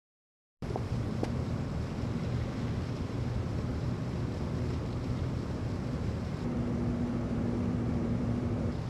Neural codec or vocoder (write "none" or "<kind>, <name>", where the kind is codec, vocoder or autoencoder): vocoder, BigVGAN v2